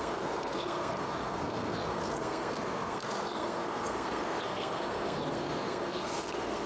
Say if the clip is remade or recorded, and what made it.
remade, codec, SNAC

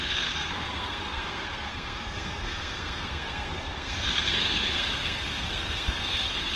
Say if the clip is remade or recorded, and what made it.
remade, codec, SNAC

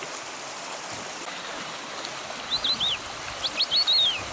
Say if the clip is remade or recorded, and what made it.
recorded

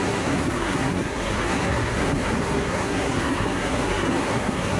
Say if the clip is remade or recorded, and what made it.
remade, codec, SNAC